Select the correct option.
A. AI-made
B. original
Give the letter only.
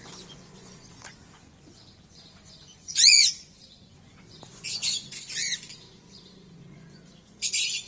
A